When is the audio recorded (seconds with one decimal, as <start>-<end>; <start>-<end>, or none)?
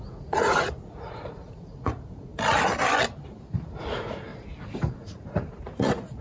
2.3-3.8; 4.3-4.9